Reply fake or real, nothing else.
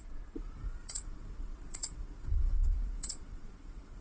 fake